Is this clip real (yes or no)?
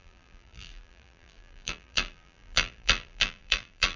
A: no